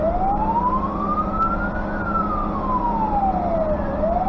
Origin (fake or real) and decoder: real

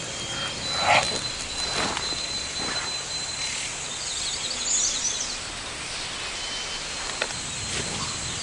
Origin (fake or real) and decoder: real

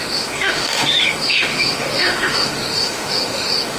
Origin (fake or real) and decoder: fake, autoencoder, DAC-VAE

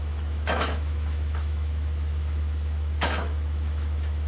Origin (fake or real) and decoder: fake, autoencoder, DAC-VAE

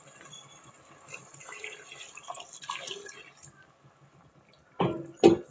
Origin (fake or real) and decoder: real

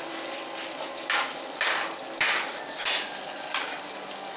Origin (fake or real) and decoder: real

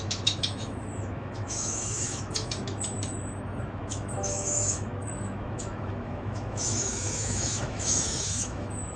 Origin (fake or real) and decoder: fake, autoencoder, DAC-VAE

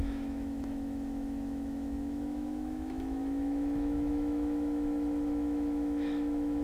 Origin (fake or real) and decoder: fake, autoencoder, DAC-VAE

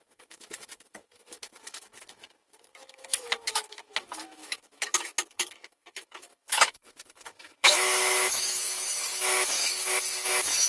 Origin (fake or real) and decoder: fake, autoencoder, DAC-VAE